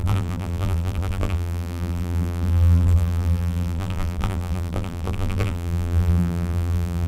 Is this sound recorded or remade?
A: remade